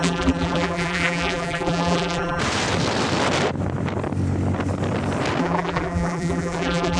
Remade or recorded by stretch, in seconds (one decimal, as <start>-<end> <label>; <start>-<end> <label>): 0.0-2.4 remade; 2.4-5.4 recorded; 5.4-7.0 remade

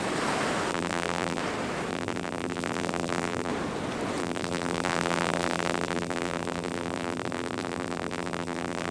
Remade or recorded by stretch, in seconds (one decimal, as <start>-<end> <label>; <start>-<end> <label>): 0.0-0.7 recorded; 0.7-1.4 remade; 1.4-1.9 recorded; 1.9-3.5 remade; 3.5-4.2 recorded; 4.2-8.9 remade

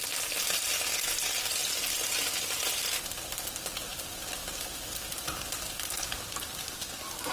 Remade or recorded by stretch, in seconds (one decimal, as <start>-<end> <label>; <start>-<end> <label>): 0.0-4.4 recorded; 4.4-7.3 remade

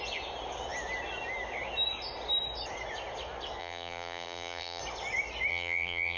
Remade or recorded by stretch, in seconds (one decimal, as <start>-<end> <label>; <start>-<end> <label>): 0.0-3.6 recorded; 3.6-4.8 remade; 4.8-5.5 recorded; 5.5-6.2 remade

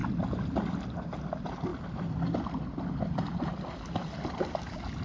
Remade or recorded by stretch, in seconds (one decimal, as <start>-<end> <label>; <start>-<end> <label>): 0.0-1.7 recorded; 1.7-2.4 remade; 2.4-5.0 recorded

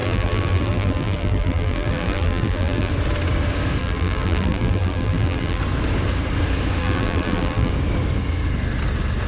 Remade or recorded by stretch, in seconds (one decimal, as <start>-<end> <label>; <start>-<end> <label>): 0.0-2.9 remade; 2.9-3.8 recorded; 3.8-5.6 remade; 5.6-6.8 recorded; 6.8-7.7 remade; 7.7-9.3 recorded

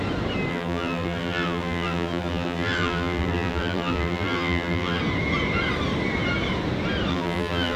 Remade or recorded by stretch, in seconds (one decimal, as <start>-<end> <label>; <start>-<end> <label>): 0.0-0.5 recorded; 0.5-5.0 remade; 5.0-7.1 recorded; 7.1-7.8 remade

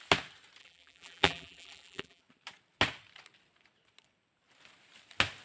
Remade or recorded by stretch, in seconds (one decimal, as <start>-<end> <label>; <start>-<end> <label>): 0.0-0.6 recorded; 0.6-2.2 remade; 2.2-5.4 recorded